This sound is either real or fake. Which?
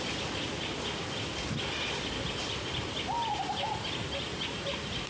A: real